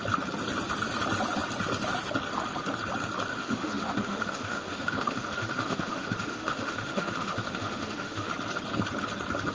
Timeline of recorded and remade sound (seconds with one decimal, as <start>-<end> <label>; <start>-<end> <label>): 0.0-3.3 recorded; 3.3-8.3 remade; 8.3-9.5 recorded